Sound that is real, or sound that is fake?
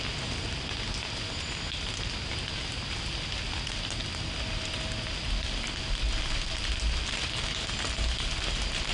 real